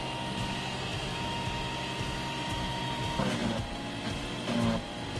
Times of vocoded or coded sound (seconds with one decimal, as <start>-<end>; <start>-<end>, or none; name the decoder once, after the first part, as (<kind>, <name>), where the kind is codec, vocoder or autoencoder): none